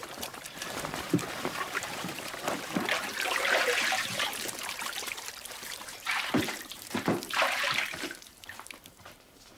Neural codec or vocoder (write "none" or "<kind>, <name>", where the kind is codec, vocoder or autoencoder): vocoder, BigVGAN v2